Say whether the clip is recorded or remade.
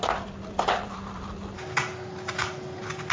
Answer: recorded